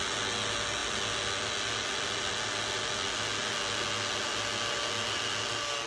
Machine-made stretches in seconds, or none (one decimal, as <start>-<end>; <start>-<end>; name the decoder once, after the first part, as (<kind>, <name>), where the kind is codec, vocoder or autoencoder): none